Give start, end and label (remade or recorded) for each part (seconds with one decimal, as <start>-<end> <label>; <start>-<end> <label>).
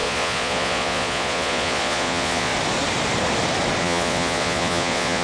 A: 0.0-2.5 remade; 2.5-3.8 recorded; 3.8-5.2 remade